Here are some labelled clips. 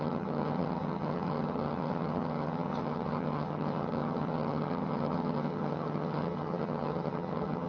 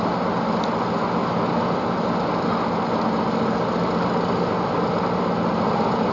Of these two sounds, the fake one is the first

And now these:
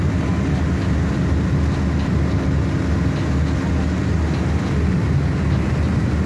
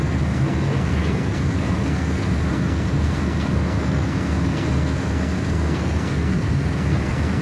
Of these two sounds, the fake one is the second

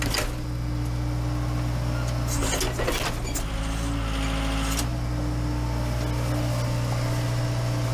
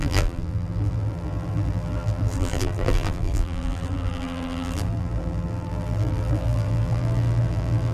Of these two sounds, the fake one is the second